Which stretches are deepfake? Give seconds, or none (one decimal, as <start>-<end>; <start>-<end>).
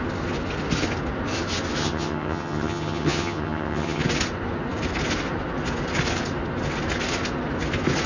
1.8-4.0